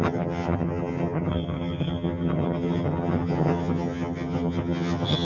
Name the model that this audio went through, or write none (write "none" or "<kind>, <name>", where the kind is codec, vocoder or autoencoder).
vocoder, HiFi-GAN